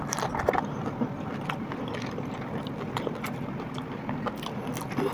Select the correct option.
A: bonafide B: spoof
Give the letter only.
A